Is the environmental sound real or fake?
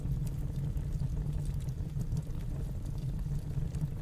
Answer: real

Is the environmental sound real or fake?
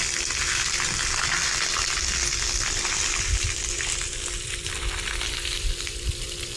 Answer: real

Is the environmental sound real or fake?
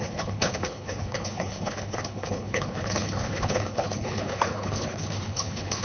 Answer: fake